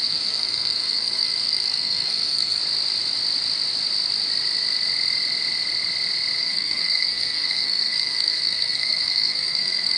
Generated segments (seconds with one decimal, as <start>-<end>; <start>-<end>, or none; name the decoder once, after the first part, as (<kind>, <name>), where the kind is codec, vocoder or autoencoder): 0.0-2.6 (codec, SNAC); 6.4-10.0